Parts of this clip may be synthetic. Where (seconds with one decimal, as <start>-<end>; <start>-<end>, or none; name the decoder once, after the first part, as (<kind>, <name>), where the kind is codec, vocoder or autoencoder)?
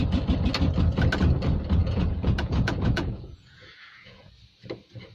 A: 1.8-4.3 (vocoder, Vocos)